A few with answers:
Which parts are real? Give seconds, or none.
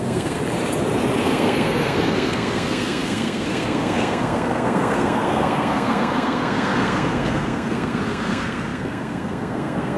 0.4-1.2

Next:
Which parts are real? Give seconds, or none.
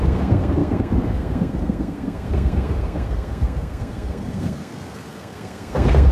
none